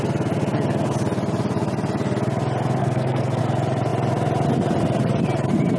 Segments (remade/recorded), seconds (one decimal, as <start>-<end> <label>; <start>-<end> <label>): 0.0-2.8 recorded; 2.8-3.4 remade; 3.4-5.8 recorded